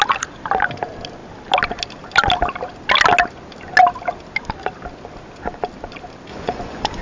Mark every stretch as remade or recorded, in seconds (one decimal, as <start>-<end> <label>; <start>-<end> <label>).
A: 0.0-6.3 recorded; 6.3-7.0 remade